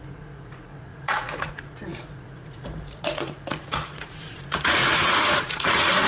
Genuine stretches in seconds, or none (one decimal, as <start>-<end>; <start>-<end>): none